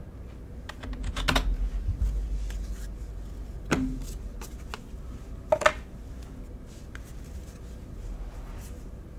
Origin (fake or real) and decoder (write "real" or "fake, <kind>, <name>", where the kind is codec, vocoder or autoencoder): real